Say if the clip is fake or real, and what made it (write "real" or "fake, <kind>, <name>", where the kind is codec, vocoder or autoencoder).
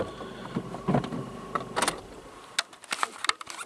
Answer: real